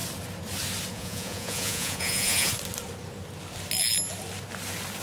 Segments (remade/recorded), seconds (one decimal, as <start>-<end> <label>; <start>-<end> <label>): 0.0-0.9 recorded; 0.9-2.5 remade; 2.5-5.0 recorded